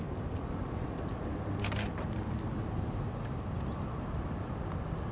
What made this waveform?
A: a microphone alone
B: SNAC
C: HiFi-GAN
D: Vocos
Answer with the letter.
A